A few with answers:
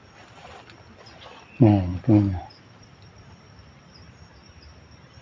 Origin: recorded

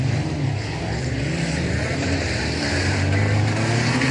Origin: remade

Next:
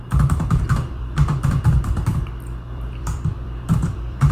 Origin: remade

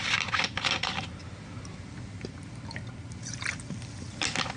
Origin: recorded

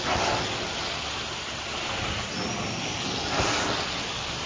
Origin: recorded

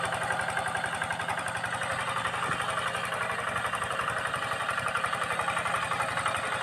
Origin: recorded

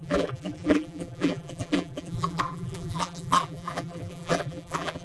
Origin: remade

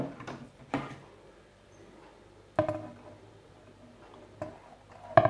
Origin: recorded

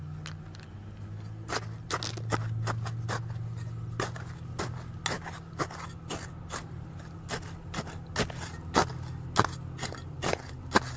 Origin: recorded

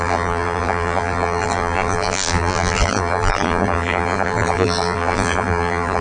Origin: remade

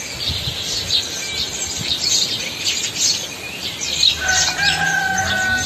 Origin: recorded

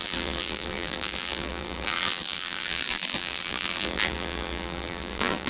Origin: remade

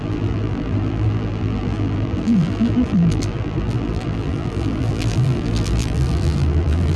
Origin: remade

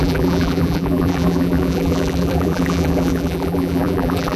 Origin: remade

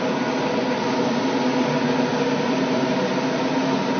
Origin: recorded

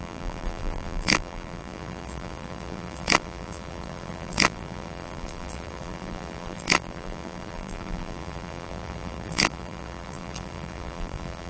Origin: remade